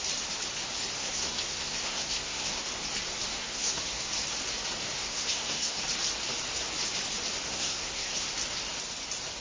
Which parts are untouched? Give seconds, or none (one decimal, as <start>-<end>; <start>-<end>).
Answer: 0.0-1.0; 2.7-3.4; 4.1-5.0; 5.8-7.5; 8.3-9.4